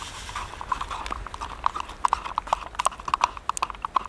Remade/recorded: recorded